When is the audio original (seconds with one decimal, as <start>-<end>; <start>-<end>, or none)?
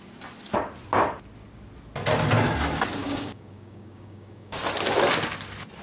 0.0-3.0; 4.6-5.8